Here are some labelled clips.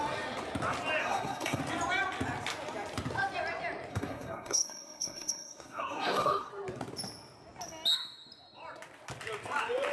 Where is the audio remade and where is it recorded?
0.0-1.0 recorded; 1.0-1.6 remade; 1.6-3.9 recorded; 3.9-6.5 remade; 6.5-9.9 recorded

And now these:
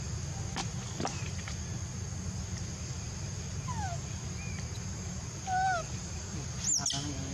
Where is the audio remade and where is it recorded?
0.0-7.3 recorded

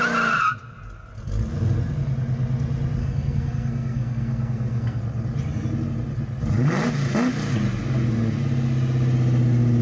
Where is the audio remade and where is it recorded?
0.0-3.0 recorded; 3.0-5.0 remade; 5.0-9.8 recorded